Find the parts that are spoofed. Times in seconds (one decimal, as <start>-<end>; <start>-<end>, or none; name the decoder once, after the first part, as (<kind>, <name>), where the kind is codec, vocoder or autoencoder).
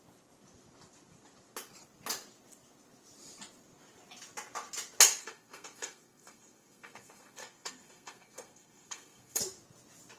5.2-9.4 (codec, SNAC)